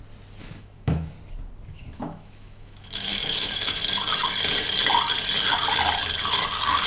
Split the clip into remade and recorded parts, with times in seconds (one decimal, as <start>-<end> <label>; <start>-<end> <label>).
0.0-0.4 recorded; 0.4-1.1 remade; 1.1-1.7 recorded; 1.7-3.7 remade; 3.7-6.9 recorded